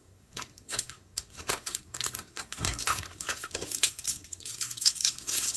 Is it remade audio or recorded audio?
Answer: remade